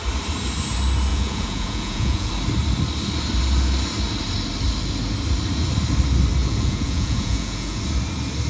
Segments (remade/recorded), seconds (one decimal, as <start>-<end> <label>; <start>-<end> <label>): 0.0-1.1 recorded; 1.1-2.3 remade; 2.3-6.4 recorded; 6.4-7.8 remade; 7.8-8.5 recorded

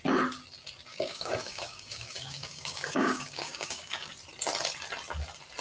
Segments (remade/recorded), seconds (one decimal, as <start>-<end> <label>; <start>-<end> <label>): 0.0-0.9 recorded; 0.9-4.1 remade; 4.1-5.6 recorded

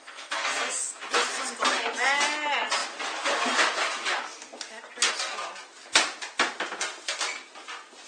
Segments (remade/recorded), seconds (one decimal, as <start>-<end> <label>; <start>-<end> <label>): 0.0-0.8 remade; 0.8-8.1 recorded

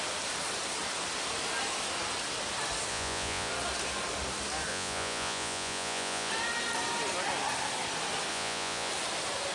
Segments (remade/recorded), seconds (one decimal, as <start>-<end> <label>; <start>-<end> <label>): 0.0-2.9 recorded; 2.9-3.5 remade; 3.5-4.7 recorded; 4.7-6.3 remade; 6.3-8.3 recorded; 8.3-8.9 remade; 8.9-9.5 recorded

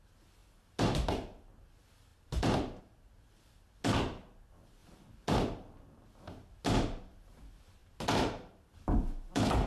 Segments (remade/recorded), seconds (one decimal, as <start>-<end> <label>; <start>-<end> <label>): 0.0-9.7 recorded

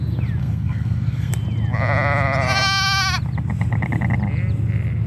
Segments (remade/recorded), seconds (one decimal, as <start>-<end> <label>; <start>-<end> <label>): 0.0-0.4 recorded; 0.4-1.3 remade; 1.3-5.1 recorded

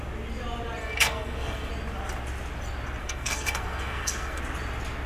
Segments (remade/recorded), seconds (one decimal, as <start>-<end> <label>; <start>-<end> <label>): 0.0-0.8 recorded; 0.8-1.7 remade; 1.7-3.0 recorded; 3.0-4.4 remade; 4.4-5.1 recorded

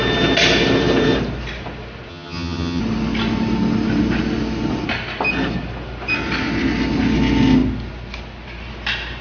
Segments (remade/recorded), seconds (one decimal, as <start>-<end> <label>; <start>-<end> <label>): 0.0-2.1 recorded; 2.1-2.8 remade; 2.8-9.2 recorded